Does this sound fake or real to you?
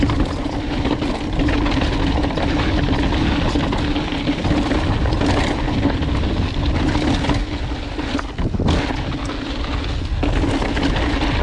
real